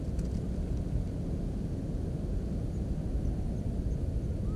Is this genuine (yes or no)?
yes